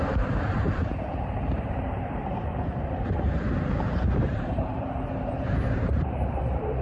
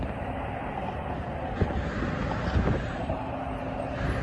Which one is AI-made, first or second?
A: first